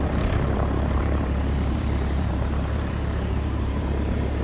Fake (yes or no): yes